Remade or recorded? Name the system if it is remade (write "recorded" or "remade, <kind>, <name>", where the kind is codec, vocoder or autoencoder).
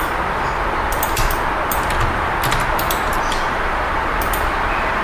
recorded